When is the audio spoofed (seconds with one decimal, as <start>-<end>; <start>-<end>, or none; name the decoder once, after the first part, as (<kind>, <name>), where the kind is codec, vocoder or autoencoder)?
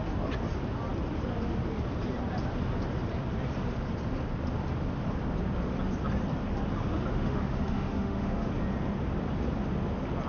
7.1-8.5 (autoencoder, DAC-VAE)